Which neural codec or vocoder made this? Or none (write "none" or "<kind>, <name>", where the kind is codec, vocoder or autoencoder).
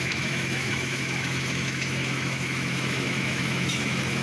autoencoder, DAC-VAE